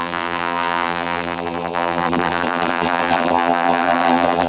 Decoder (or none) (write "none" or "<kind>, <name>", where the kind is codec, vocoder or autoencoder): vocoder, BigVGAN v2